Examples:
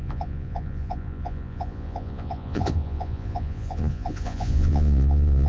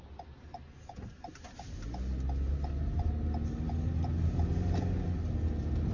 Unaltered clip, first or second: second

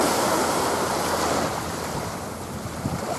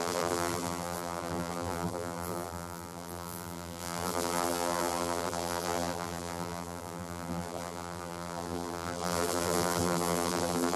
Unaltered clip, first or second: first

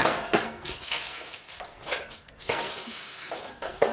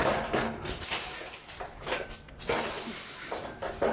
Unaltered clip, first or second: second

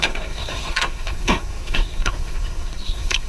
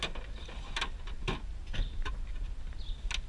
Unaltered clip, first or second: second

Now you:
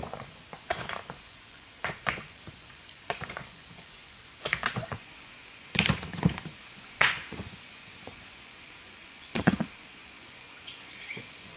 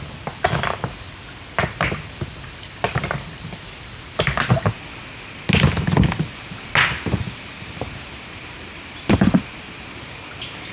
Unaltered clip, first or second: second